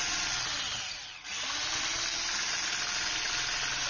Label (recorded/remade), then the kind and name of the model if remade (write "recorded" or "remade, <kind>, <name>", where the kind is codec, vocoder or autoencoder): recorded